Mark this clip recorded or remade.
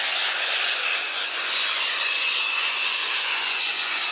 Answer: remade